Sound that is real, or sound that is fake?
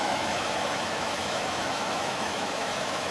fake